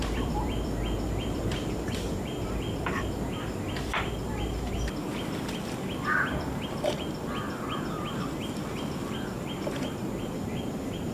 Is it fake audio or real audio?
fake